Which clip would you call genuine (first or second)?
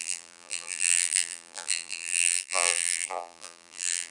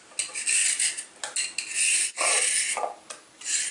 second